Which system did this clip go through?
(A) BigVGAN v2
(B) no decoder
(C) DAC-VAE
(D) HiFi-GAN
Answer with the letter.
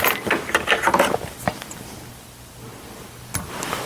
A